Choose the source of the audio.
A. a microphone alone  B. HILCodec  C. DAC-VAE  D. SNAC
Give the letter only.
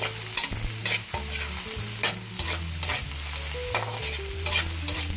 A